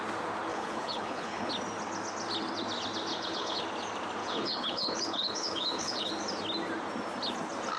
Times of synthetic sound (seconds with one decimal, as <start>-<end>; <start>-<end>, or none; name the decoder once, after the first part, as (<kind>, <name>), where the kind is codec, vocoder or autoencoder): 0.5-1.5 (codec, HILCodec); 3.1-3.6; 4.2-6.1